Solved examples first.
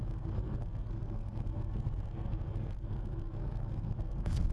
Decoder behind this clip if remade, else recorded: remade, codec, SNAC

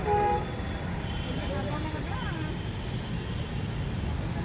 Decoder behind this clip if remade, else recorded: recorded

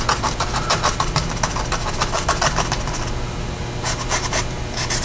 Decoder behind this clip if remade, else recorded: recorded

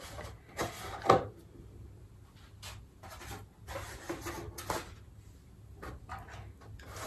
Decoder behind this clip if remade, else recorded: recorded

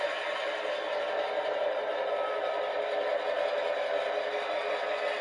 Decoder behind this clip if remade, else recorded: recorded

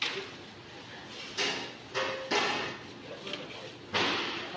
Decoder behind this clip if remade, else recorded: recorded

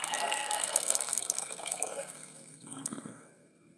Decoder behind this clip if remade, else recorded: remade, codec, SNAC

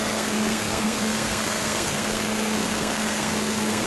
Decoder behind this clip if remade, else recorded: remade, codec, SNAC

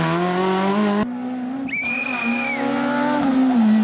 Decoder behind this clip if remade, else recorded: recorded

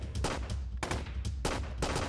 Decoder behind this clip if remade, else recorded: recorded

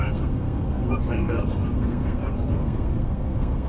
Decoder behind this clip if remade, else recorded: remade, codec, SNAC